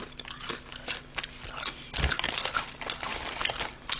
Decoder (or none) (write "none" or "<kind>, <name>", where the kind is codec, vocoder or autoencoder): none